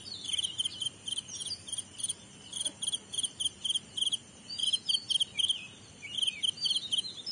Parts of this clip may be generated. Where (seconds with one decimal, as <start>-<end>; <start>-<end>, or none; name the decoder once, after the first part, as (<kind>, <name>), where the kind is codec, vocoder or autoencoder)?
0.0-4.7 (vocoder, BigVGAN v2); 6.6-7.3